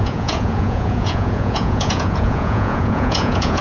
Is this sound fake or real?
fake